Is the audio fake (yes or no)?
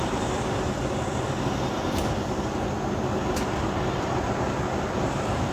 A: no